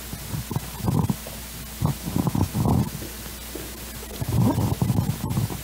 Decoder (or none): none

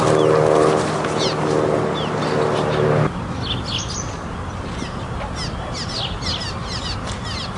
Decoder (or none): none